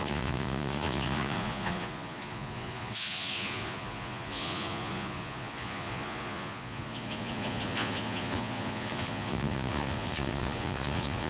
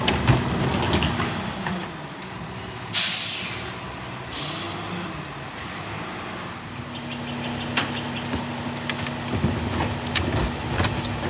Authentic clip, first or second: second